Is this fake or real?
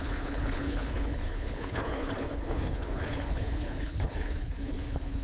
fake